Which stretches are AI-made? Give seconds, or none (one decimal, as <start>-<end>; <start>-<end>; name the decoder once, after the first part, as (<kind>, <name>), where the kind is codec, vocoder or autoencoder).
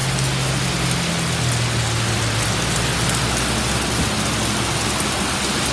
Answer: none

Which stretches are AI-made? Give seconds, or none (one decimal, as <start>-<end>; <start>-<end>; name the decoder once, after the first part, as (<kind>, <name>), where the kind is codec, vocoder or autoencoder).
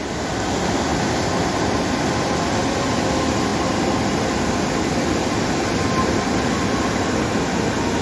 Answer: none